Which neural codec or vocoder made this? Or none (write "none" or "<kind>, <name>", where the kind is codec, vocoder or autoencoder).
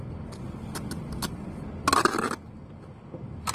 none